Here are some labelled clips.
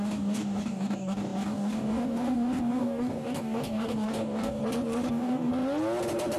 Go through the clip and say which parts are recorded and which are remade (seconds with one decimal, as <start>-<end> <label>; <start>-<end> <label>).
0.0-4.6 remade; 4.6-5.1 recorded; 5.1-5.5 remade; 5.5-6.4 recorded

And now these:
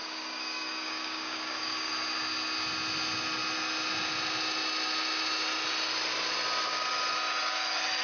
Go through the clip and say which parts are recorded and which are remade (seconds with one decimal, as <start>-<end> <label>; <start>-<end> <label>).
0.0-1.9 remade; 1.9-8.0 recorded

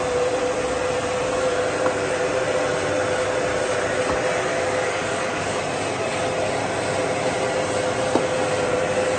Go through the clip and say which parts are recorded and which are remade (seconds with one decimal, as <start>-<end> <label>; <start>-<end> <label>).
0.0-4.5 recorded; 4.5-5.6 remade; 5.6-9.2 recorded

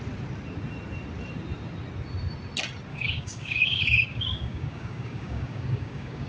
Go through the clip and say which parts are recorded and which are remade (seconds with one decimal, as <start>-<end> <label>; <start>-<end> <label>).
0.0-2.9 recorded; 2.9-6.3 remade

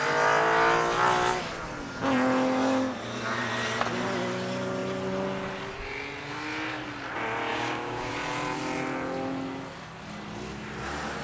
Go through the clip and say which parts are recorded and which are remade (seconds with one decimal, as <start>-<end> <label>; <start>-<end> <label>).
0.0-7.5 recorded; 7.5-8.1 remade; 8.1-11.2 recorded

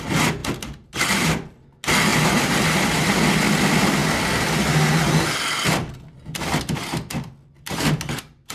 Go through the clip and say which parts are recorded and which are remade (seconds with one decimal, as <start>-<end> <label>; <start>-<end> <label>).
0.0-8.5 recorded

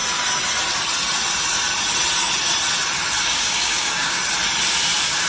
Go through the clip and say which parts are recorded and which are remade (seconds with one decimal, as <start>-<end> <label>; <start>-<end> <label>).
0.0-3.2 recorded; 3.2-4.2 remade; 4.2-5.3 recorded

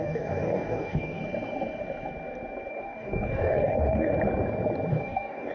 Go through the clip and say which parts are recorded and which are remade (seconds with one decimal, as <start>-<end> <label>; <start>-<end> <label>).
0.0-1.2 remade; 1.2-2.7 recorded; 2.7-4.1 remade; 4.1-4.9 recorded; 4.9-5.5 remade